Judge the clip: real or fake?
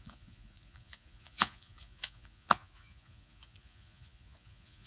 fake